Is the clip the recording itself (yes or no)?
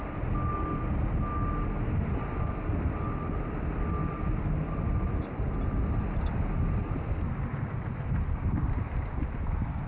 yes